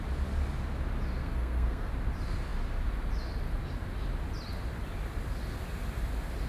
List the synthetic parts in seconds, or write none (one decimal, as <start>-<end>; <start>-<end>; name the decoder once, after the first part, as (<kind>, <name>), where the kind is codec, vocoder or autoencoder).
1.2-1.9 (codec, SNAC)